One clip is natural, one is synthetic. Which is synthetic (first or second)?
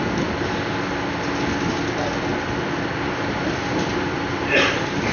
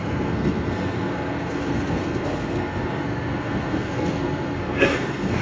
second